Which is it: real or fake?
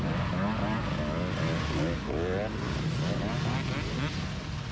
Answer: real